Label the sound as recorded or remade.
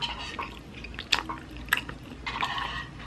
recorded